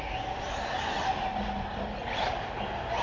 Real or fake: real